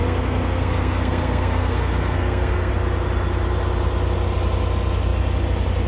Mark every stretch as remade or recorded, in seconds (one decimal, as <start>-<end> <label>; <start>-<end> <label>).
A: 0.0-2.7 remade; 2.7-5.9 recorded